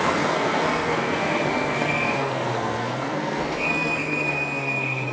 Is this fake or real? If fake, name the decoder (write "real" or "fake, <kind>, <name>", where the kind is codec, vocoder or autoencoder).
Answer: fake, codec, SNAC